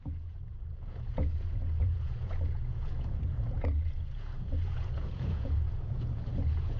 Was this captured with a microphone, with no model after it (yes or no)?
no